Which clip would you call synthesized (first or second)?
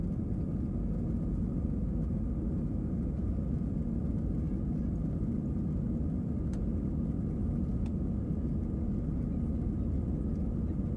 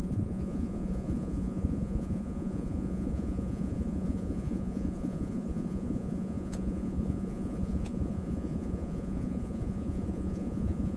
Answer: second